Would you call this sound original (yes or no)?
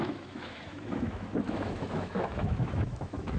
no